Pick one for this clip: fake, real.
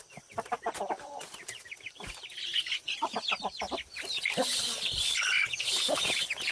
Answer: real